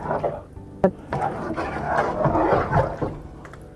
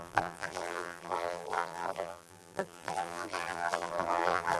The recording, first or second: first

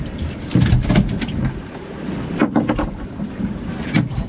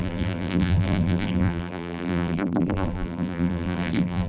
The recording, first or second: first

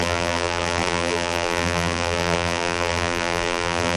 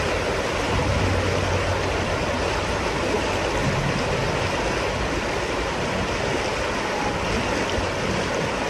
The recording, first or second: second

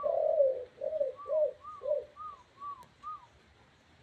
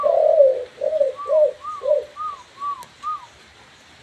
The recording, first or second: second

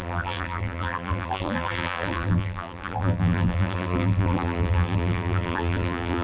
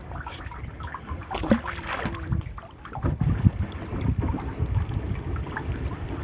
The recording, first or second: second